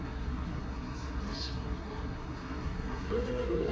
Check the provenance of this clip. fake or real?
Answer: fake